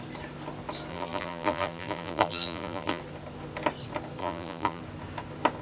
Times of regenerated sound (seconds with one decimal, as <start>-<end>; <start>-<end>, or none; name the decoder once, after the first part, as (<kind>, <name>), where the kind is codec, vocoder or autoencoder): 0.9-3.0 (vocoder, BigVGAN v2); 4.2-4.8